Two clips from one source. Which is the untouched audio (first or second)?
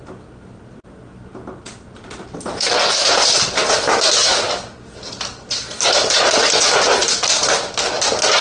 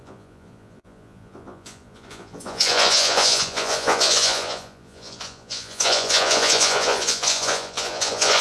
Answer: first